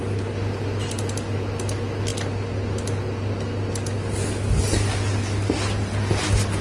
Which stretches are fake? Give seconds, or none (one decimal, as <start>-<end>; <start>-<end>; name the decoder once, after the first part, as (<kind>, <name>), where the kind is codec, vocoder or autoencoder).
none